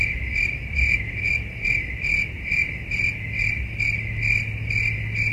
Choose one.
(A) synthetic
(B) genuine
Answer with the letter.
B